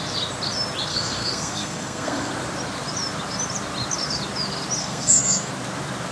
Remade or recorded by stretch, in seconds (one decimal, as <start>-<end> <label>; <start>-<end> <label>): 0.0-0.9 recorded; 0.9-2.3 remade; 2.3-4.8 recorded; 4.8-5.5 remade; 5.5-6.1 recorded